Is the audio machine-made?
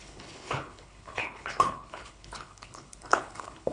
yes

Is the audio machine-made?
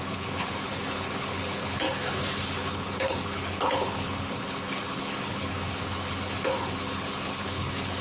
yes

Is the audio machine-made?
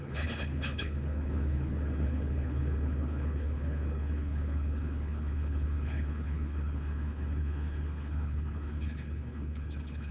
yes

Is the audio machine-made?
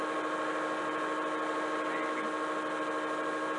no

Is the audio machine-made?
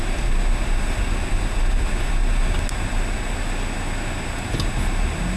no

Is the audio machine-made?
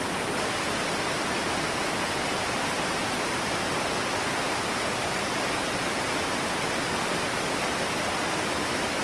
no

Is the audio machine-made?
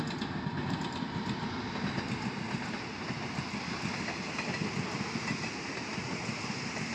no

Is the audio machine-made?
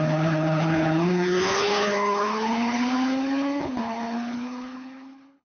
yes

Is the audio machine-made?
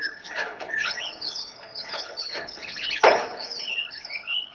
yes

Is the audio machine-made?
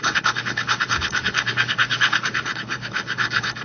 yes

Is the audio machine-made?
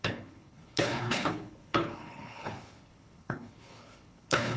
yes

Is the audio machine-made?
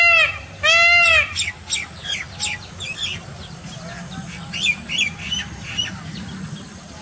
no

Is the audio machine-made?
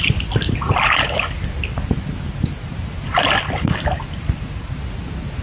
no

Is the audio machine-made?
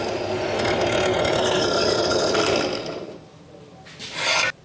no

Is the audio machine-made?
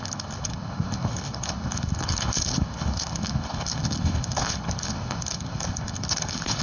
yes